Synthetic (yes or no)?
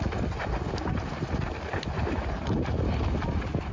no